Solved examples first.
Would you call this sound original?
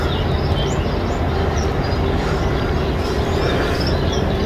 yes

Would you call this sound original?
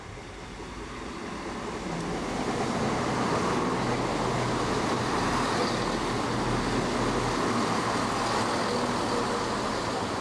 yes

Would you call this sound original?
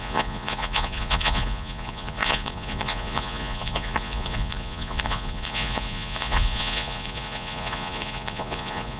no